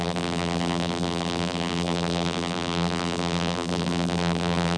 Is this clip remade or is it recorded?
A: remade